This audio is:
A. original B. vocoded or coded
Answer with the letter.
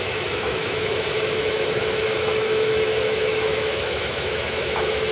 B